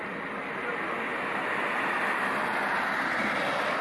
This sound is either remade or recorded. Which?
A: recorded